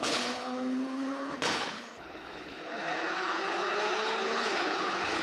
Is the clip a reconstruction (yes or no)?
yes